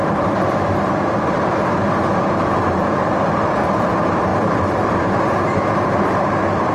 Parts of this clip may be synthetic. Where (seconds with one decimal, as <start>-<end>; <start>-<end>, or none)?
0.0-6.7